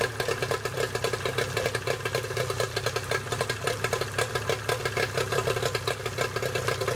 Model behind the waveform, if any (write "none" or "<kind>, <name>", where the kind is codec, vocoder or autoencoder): none